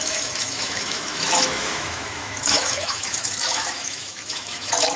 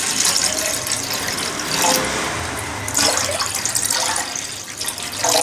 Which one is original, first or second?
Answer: second